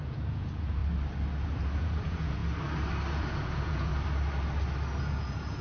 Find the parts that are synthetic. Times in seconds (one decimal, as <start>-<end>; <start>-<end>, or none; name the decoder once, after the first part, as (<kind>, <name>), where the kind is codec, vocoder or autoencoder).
0.0-0.8 (vocoder, Vocos); 1.4-2.4; 3.1-3.9; 5.0-5.6